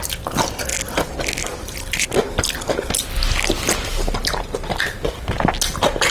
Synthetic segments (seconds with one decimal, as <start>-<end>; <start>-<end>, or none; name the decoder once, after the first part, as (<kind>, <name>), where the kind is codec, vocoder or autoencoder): none